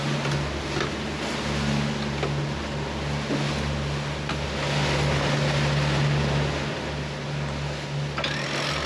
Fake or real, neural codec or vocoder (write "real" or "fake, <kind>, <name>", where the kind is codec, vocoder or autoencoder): real